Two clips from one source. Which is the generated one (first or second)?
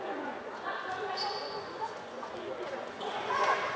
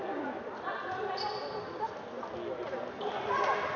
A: first